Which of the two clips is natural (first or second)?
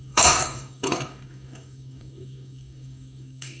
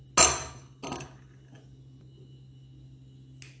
second